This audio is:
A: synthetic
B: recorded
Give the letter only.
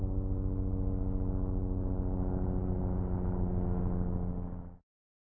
B